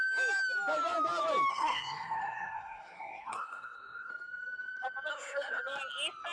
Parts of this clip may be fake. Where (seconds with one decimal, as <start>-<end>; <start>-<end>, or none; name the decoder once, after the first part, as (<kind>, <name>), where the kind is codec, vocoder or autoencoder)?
1.5-4.1 (codec, SNAC); 5.1-5.6